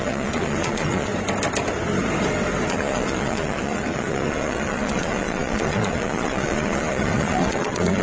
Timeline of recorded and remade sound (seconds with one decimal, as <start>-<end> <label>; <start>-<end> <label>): 0.0-1.1 remade; 1.1-2.7 recorded; 2.7-8.0 remade